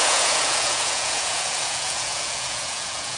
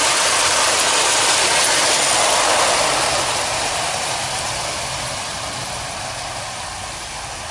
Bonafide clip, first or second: second